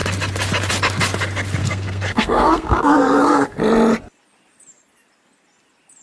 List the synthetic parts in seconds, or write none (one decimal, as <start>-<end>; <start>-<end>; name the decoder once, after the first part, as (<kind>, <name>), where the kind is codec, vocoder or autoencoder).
1.6-3.6 (codec, SNAC)